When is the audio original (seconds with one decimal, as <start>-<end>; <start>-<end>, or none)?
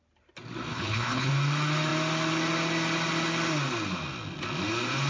0.0-0.7; 1.3-5.1